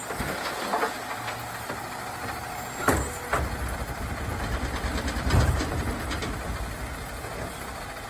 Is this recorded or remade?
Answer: recorded